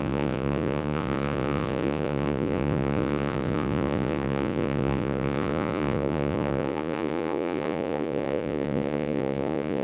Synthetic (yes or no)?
yes